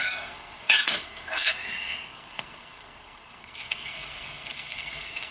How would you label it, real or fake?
fake